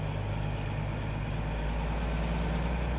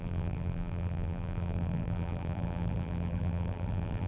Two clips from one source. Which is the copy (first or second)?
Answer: second